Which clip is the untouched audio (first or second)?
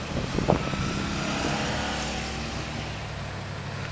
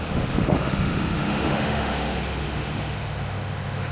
first